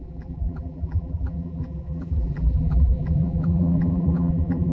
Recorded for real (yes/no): no